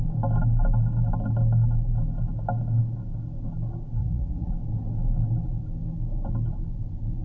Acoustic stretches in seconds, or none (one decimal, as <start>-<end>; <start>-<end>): 0.0-4.0; 4.5-7.2